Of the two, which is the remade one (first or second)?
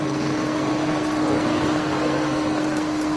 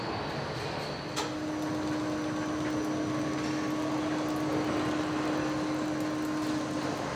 first